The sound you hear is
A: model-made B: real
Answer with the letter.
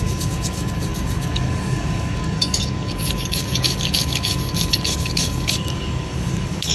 A